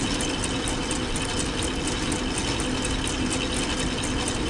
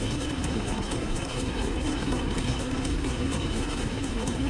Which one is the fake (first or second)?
second